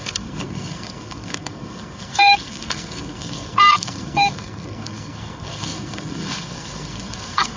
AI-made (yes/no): yes